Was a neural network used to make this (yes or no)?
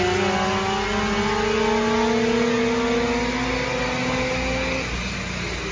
no